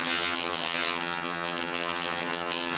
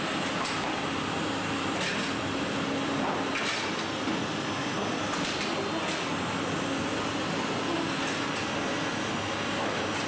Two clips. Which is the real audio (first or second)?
second